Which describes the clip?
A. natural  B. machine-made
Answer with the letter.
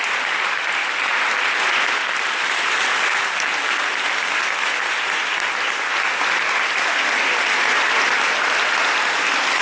A